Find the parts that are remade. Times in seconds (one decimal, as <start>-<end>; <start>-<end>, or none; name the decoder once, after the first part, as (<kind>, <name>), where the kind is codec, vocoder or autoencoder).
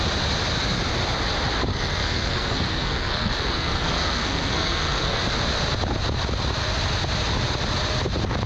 1.7-5.2 (codec, SNAC)